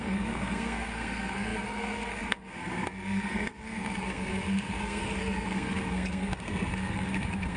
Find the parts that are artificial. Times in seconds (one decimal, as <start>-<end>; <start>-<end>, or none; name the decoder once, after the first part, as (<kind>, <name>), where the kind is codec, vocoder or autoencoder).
0.0-7.6 (codec, SNAC)